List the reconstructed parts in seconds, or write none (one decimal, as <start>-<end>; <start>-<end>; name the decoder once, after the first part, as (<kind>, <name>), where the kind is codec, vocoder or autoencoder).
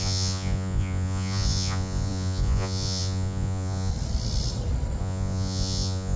0.0-3.9 (vocoder, Vocos); 5.0-6.2